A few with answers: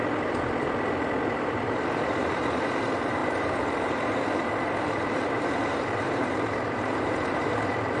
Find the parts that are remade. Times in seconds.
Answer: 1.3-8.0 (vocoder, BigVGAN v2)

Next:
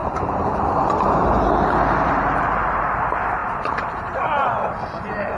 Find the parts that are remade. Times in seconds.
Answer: 0.0-5.4 (vocoder, BigVGAN v2)

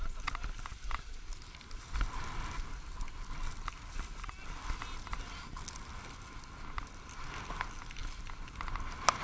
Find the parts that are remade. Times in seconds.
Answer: none

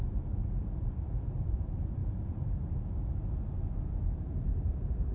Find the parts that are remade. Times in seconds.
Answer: 0.0-5.1 (vocoder, BigVGAN v2)